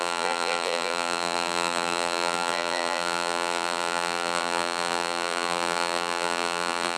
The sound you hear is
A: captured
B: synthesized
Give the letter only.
B